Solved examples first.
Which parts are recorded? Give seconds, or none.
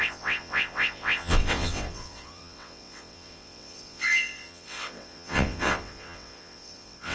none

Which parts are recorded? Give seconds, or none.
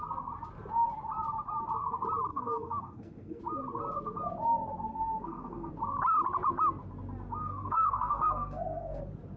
0.0-2.3; 3.4-4.9; 5.7-7.4; 9.0-9.4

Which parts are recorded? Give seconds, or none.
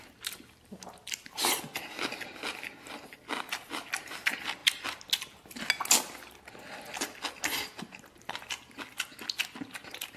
0.0-10.2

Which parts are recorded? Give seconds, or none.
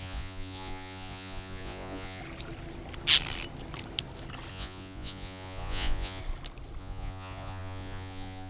2.2-4.5; 6.2-6.8